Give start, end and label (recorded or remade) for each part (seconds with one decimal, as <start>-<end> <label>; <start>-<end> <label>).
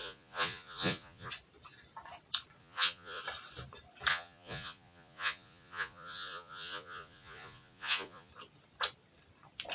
0.0-1.3 remade; 1.3-2.6 recorded; 2.6-3.2 remade; 3.2-4.1 recorded; 4.1-8.3 remade; 8.3-9.7 recorded